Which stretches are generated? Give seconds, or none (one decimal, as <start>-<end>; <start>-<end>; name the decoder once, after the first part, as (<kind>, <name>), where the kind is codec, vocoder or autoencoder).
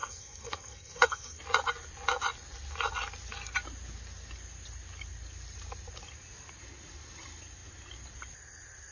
0.0-1.4 (codec, SNAC)